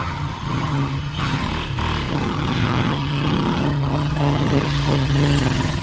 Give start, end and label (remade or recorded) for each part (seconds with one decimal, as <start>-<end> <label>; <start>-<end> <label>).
0.0-1.5 remade; 1.5-2.1 recorded; 2.1-5.8 remade

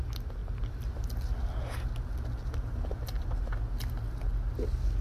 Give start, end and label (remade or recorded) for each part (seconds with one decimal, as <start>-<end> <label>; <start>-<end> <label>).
0.0-5.0 recorded

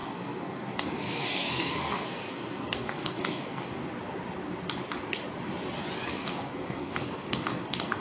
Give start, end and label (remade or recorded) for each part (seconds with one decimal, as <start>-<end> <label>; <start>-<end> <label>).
0.0-3.8 remade; 3.8-6.1 recorded; 6.1-8.0 remade

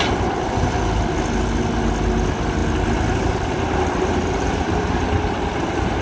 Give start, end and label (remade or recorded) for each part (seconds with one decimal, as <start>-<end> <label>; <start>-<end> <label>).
0.0-6.0 recorded